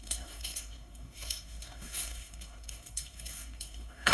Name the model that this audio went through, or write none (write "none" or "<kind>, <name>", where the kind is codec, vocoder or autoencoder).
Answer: codec, SNAC